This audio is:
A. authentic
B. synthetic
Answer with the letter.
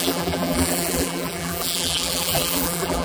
B